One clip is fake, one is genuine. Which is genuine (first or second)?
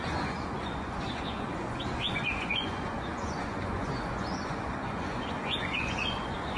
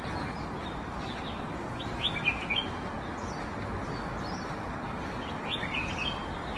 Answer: second